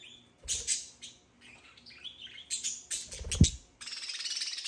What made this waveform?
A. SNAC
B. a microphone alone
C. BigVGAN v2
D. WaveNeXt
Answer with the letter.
B